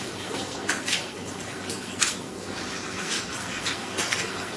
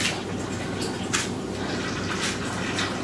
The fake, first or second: first